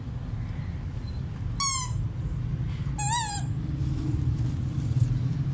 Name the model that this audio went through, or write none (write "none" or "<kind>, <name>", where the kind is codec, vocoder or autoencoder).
none